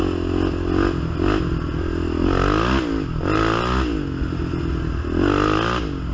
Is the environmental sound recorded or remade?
recorded